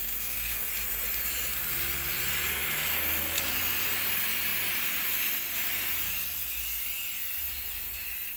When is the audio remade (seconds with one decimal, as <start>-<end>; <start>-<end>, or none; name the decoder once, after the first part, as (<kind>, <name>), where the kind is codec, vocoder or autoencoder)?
0.0-0.7 (codec, SNAC)